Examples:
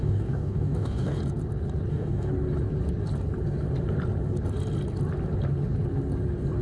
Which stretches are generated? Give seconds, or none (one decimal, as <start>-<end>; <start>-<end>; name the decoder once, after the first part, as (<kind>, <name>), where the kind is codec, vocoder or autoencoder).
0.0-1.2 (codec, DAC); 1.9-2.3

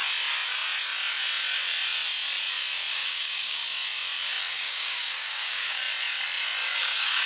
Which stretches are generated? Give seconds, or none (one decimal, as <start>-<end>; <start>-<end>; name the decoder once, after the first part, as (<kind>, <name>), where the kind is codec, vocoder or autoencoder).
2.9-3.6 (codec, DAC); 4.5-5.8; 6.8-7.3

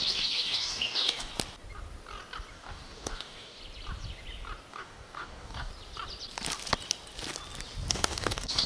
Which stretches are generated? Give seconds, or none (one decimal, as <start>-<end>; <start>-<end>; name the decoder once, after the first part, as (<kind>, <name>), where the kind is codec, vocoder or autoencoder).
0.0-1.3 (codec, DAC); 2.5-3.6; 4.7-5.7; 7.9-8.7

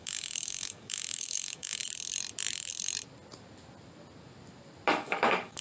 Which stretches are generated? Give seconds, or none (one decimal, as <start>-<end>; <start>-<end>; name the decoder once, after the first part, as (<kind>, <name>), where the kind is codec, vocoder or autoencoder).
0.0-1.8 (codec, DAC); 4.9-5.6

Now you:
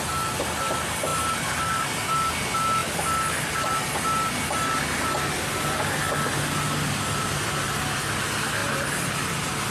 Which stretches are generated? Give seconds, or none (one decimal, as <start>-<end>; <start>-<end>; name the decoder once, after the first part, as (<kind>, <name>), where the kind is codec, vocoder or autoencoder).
none

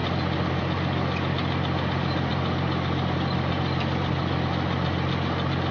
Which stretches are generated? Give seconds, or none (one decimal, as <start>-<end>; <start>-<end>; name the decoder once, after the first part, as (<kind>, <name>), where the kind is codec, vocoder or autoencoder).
none

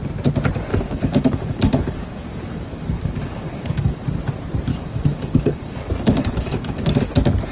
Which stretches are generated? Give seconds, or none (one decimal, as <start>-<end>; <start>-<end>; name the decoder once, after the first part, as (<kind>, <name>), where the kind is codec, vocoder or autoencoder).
0.7-4.0 (codec, DAC); 4.7-6.9